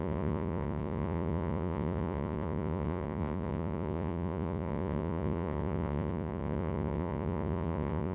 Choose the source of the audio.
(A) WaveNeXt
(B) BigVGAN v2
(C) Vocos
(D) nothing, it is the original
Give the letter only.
C